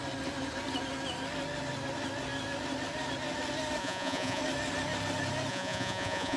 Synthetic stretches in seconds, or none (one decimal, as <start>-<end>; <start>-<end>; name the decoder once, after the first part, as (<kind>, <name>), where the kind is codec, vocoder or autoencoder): 3.8-4.4 (vocoder, Vocos); 5.5-6.4